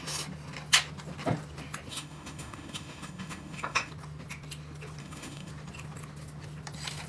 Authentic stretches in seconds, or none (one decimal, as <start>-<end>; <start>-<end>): 0.0-1.9; 3.9-5.0; 5.5-7.1